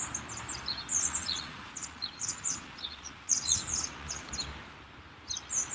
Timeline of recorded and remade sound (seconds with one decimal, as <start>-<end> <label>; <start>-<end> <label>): 0.0-0.9 recorded; 0.9-4.3 remade; 4.3-5.7 recorded